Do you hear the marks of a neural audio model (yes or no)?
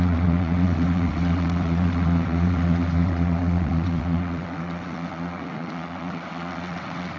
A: yes